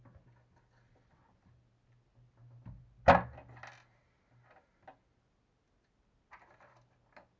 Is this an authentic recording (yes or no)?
yes